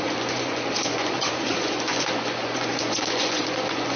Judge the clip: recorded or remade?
remade